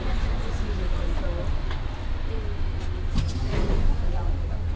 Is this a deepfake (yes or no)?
no